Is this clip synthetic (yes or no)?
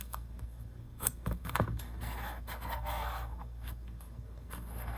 yes